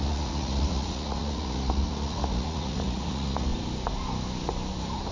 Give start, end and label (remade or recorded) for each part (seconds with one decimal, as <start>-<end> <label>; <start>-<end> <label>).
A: 0.0-3.5 remade; 3.5-5.1 recorded